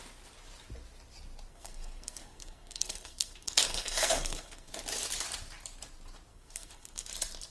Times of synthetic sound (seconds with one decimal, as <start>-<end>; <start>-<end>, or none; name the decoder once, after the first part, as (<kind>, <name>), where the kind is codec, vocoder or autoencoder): 1.5-4.7 (codec, SNAC); 6.3-7.1

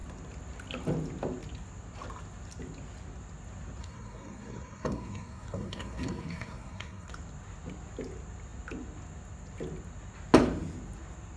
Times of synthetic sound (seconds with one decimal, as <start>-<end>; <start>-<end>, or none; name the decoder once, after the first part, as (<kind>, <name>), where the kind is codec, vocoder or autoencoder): 3.8-7.1 (codec, SNAC)